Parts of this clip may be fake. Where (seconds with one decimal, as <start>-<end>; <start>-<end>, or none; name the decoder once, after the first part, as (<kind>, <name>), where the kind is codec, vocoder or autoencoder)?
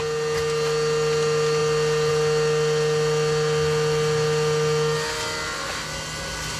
none